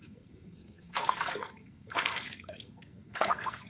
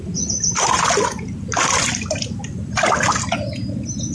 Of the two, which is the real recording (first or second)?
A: second